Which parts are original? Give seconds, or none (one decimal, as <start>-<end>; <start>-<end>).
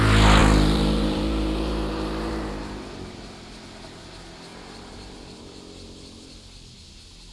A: 0.0-0.4; 2.8-4.5; 5.6-7.3